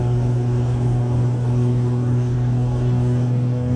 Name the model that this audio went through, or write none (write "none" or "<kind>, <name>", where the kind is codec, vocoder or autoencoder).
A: codec, DAC